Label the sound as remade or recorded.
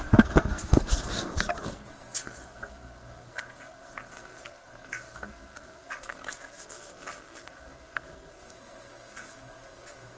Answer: remade